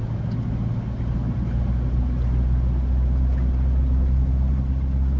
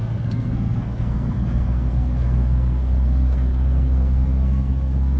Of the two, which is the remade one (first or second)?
second